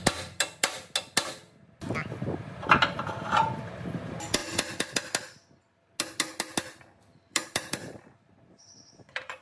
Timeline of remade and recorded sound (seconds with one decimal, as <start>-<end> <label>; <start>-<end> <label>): 0.0-7.3 recorded; 7.3-9.4 remade